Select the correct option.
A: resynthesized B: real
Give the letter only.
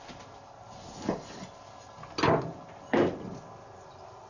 B